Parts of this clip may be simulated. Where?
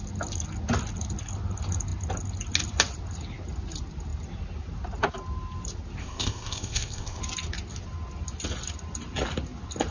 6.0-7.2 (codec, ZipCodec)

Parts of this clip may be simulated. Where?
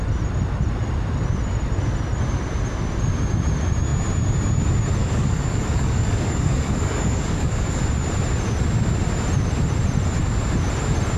5.0-7.8 (codec, DAC)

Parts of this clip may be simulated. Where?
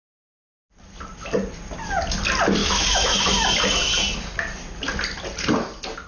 2.6-3.3 (autoencoder, DAC-VAE)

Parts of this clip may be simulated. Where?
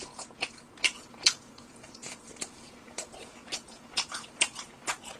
0.0-5.2 (vocoder, Vocos)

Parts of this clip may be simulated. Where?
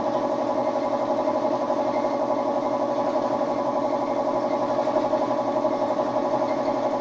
none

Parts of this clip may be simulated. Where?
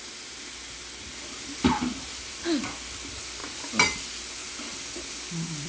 none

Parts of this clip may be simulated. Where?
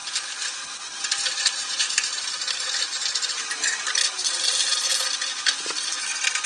none